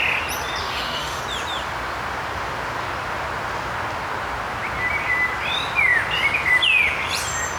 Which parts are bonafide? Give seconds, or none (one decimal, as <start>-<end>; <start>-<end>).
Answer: 0.0-0.6; 1.2-7.6